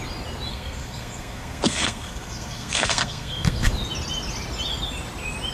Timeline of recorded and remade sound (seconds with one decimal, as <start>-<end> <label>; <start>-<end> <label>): 0.0-0.5 recorded; 0.5-3.7 remade; 3.7-5.5 recorded